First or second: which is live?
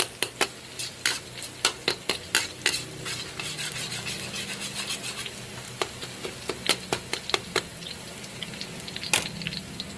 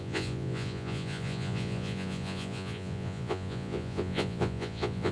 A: first